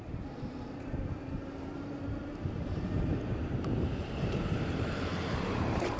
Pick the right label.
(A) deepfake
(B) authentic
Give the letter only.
A